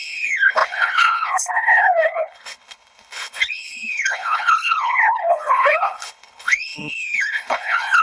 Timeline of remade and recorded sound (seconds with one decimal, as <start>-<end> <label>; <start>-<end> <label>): 0.0-8.0 remade